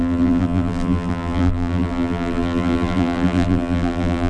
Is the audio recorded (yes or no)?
no